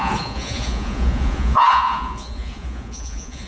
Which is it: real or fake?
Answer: fake